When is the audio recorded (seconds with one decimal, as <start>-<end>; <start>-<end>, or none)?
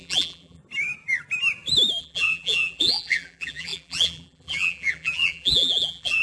0.6-2.0